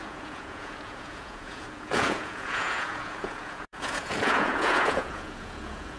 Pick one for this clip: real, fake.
fake